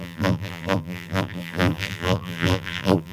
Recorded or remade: remade